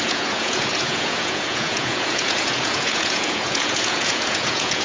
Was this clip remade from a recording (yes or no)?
yes